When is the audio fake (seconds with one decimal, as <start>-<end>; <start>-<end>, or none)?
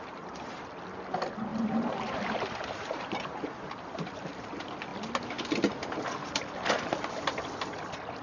1.5-4.0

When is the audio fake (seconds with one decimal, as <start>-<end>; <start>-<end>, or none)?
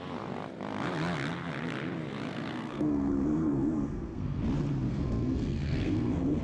2.3-4.4; 4.9-6.4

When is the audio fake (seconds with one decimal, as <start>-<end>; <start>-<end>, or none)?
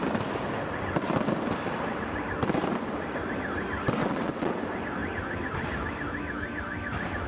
4.0-4.5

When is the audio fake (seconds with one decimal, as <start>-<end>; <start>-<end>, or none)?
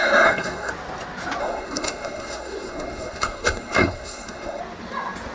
0.0-0.7; 1.4-4.6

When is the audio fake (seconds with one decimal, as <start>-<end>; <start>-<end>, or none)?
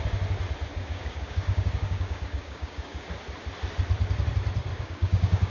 0.7-3.1; 4.7-5.5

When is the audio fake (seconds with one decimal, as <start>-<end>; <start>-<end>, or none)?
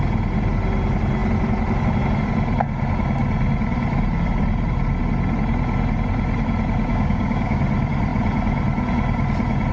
6.9-7.6